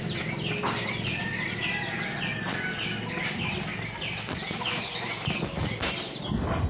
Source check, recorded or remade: recorded